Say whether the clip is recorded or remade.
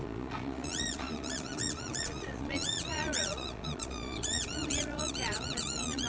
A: remade